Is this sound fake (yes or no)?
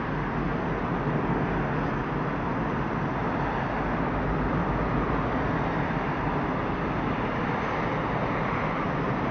no